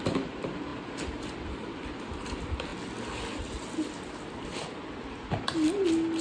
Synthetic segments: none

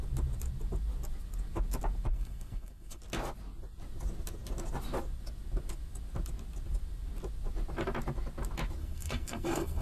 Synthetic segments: 2.1-3.0 (codec, SNAC); 8.8-9.8

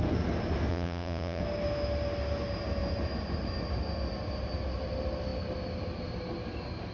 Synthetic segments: 0.7-1.4 (vocoder, Vocos)

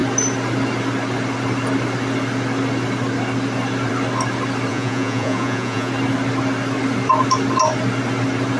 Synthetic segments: 4.7-5.9 (vocoder, Vocos)

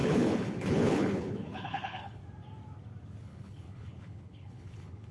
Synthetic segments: 0.0-2.2 (codec, HILCodec); 3.2-5.1

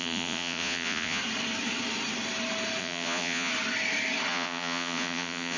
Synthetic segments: 0.0-1.2 (vocoder, Vocos); 2.8-3.5; 4.3-5.6

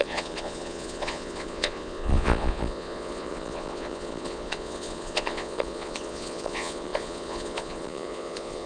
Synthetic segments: 0.0-8.7 (vocoder, Vocos)

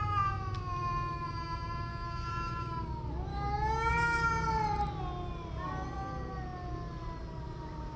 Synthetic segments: 1.9-2.9 (codec, DAC); 3.3-3.9